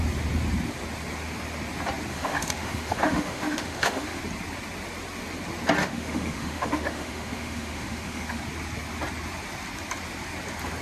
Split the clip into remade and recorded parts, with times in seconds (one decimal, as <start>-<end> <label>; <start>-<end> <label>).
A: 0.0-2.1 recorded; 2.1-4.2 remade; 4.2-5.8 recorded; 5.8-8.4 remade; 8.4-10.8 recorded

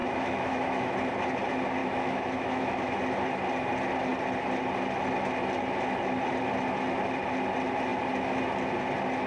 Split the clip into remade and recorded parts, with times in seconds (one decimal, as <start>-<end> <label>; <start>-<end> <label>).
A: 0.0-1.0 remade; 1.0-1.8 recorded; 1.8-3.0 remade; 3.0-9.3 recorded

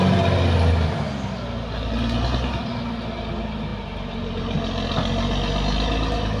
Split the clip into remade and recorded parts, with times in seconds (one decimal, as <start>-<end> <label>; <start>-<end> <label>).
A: 0.0-6.4 recorded

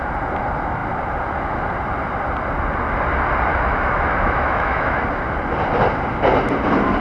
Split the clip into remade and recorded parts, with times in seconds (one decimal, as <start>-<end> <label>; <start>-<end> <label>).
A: 0.0-3.5 recorded; 3.5-5.0 remade; 5.0-7.0 recorded